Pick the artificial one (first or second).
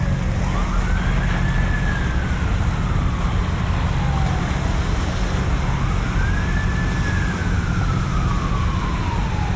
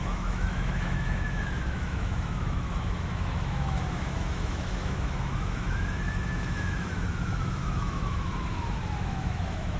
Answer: second